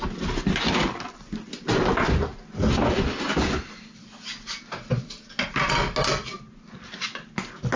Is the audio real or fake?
real